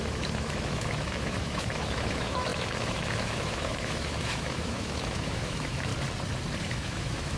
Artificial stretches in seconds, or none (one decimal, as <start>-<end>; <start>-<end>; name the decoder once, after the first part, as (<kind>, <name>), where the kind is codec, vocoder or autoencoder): 0.0-5.9 (autoencoder, DAC-VAE); 6.6-7.4